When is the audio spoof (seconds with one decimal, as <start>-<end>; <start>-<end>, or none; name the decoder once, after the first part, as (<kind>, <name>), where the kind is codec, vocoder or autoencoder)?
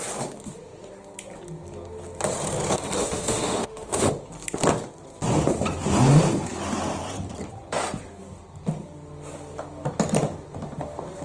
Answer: 3.0-4.1 (autoencoder, DAC-VAE)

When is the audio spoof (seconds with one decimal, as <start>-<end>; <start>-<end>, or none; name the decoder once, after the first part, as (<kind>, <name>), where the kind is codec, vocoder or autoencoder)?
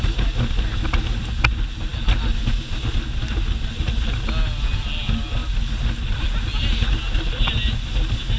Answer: none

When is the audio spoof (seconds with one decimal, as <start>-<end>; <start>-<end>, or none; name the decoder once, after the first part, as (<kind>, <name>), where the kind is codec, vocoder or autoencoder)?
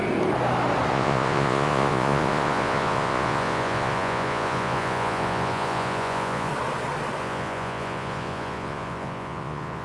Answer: 0.9-6.5 (vocoder, Vocos); 7.2-9.8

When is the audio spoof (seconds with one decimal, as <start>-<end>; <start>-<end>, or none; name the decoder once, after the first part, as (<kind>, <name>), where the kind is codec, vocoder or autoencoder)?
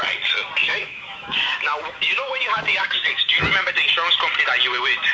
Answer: 0.6-3.7 (autoencoder, DAC-VAE)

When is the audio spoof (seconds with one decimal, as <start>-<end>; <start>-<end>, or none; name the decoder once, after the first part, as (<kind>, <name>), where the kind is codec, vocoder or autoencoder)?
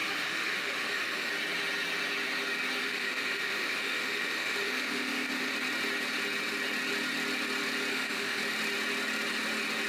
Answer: 0.0-1.3 (autoencoder, DAC-VAE); 2.8-5.5; 7.9-8.4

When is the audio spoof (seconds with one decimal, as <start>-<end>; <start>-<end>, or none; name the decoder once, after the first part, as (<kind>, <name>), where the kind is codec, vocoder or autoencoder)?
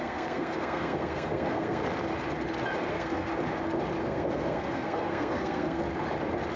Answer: 0.0-1.8 (codec, SNAC); 2.9-3.3; 4.0-5.8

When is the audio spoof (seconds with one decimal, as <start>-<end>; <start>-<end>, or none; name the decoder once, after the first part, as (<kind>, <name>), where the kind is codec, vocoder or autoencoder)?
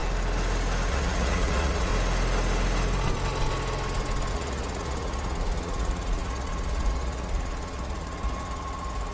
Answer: 0.9-1.9 (vocoder, Vocos); 4.3-9.1